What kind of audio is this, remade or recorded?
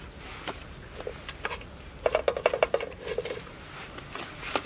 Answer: recorded